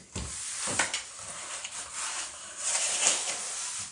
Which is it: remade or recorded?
recorded